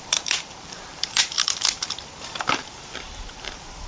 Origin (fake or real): fake